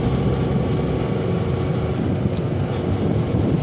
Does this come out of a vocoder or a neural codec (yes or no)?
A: no